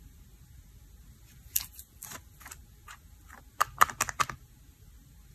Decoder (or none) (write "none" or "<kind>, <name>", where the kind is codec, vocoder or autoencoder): none